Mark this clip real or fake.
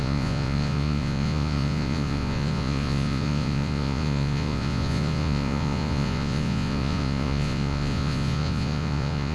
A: fake